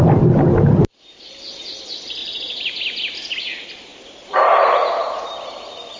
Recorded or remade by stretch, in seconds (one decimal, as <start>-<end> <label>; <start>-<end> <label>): 0.0-6.0 recorded